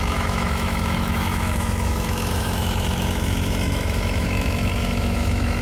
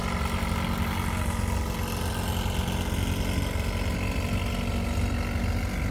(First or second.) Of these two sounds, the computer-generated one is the first